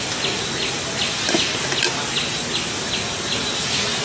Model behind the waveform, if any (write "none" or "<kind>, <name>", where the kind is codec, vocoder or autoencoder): none